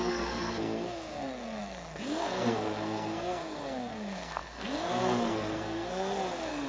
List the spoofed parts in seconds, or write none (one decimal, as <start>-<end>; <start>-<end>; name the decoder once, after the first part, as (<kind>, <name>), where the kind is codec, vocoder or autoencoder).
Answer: 0.0-6.7 (codec, SNAC)